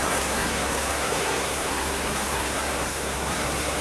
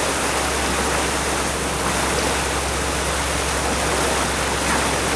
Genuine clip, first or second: second